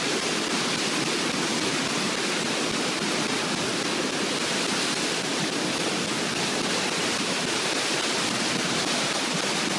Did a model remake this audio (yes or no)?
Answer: no